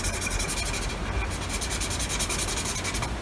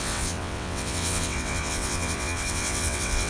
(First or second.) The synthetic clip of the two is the second